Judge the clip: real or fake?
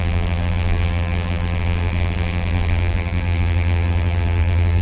fake